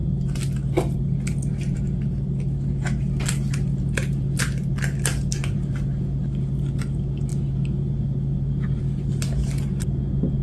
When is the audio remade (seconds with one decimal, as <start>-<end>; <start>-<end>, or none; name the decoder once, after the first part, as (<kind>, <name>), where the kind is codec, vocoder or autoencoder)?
none